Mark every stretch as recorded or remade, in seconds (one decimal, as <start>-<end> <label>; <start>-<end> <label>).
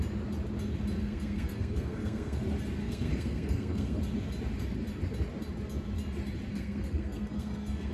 0.0-1.0 recorded; 1.0-2.4 remade; 2.4-2.8 recorded; 2.8-4.0 remade; 4.0-6.5 recorded; 6.5-7.9 remade